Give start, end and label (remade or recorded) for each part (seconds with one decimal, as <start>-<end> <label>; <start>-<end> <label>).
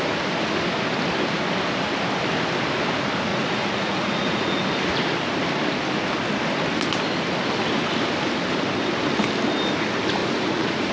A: 0.0-3.3 recorded; 3.3-4.7 remade; 4.7-10.2 recorded; 10.2-10.9 remade